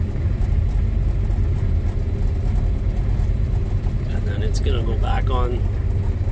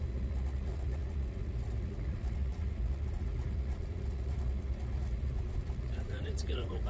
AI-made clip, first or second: second